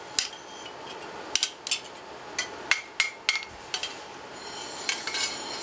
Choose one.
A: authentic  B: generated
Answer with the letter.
A